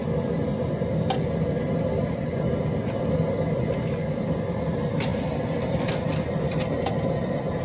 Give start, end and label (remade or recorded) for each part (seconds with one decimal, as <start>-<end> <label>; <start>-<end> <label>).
0.0-7.6 recorded